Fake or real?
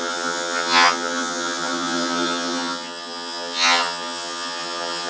fake